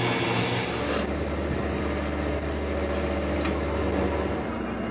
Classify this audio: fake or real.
real